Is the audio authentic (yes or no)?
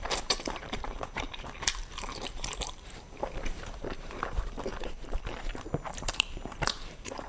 no